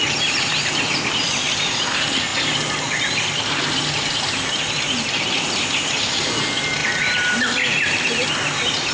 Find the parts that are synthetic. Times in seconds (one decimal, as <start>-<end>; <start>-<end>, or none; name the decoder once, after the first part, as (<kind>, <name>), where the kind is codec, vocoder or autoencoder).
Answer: 6.8-8.3 (vocoder, BigVGAN v2)